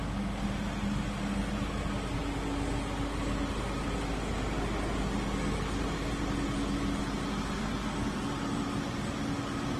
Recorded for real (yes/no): yes